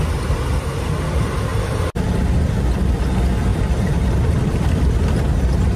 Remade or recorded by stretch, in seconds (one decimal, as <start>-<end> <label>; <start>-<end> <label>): 0.0-1.5 recorded; 1.5-2.1 remade; 2.1-3.5 recorded; 3.5-4.9 remade; 4.9-5.8 recorded

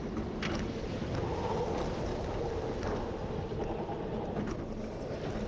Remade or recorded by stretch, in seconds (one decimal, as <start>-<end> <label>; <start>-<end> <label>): 0.0-5.5 recorded

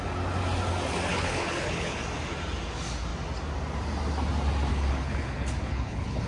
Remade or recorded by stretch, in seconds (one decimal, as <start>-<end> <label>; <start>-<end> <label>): 0.0-1.1 recorded; 1.1-2.0 remade; 2.0-4.7 recorded; 4.7-6.3 remade

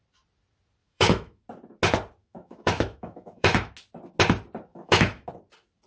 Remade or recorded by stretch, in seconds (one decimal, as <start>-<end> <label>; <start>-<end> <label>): 0.0-0.8 recorded; 0.8-1.4 remade; 1.4-2.2 recorded; 2.2-3.7 remade; 3.7-4.7 recorded; 4.7-5.3 remade; 5.3-5.9 recorded

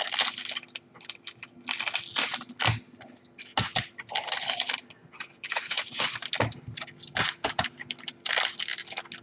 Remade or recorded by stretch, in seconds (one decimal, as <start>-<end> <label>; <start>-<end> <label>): 0.0-5.0 recorded; 5.0-6.1 remade; 6.1-9.2 recorded

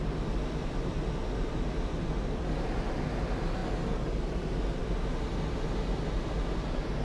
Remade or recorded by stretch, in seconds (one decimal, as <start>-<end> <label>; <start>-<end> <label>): 0.0-7.0 recorded